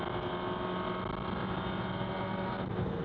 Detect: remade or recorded recorded